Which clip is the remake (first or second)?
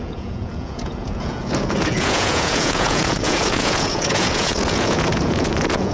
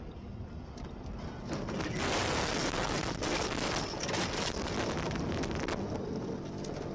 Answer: first